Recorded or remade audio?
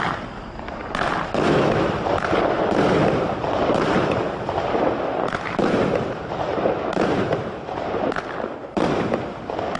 remade